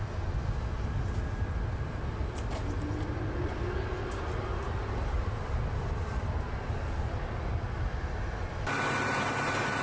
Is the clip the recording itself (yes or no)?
yes